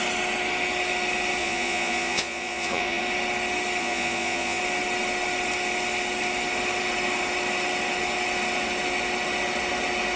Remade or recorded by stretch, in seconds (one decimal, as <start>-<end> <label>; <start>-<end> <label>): 0.0-1.4 recorded; 1.4-3.0 remade; 3.0-3.8 recorded; 3.8-4.6 remade; 4.6-10.2 recorded